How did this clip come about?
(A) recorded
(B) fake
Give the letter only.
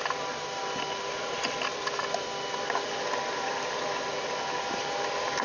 A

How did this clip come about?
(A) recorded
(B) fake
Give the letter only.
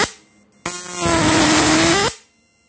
A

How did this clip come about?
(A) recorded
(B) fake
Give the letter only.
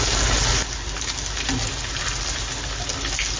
A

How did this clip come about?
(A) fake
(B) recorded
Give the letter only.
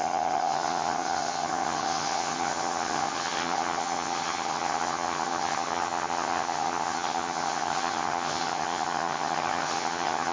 A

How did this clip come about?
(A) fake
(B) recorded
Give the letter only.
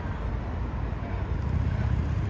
B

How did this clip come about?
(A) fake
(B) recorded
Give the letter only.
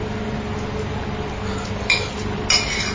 B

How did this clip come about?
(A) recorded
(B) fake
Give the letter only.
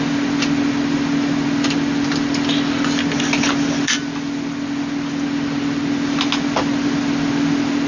A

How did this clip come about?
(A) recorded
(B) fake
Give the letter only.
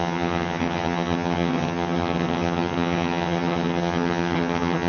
B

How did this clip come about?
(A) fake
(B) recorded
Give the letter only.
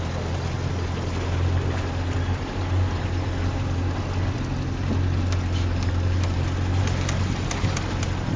B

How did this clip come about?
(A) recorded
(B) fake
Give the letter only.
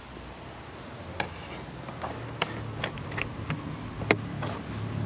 A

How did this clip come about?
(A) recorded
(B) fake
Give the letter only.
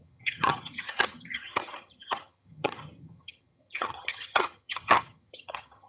B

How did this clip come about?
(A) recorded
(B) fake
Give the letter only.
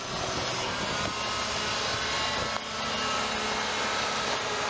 A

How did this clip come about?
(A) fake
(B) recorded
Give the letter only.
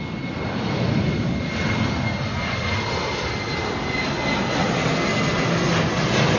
B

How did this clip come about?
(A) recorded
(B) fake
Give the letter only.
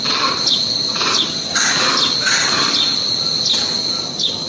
A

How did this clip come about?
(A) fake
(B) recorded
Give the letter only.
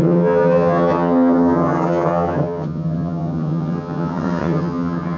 A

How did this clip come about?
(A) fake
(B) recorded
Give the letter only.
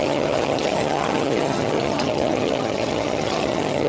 A